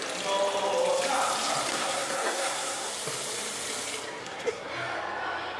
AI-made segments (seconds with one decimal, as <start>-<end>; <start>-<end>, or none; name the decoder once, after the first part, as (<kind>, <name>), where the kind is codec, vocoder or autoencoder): 1.7-2.9 (codec, SNAC); 4.2-4.7